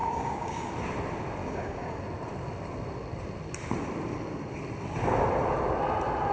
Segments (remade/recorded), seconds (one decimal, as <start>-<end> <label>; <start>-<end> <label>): 0.0-0.7 remade; 0.7-1.4 recorded; 1.4-2.0 remade; 2.0-6.3 recorded